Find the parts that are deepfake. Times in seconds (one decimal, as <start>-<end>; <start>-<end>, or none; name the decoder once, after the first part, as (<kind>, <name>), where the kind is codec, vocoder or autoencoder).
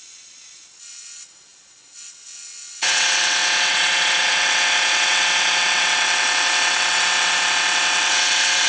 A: 0.0-8.7 (vocoder, WaveNeXt)